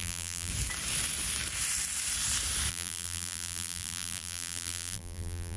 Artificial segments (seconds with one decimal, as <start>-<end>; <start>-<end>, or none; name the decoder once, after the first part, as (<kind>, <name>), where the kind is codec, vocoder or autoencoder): 0.0-0.5 (vocoder, BigVGAN v2); 2.7-5.6